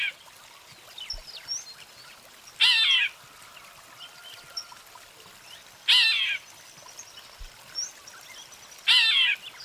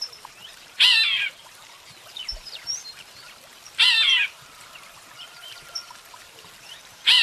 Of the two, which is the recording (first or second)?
first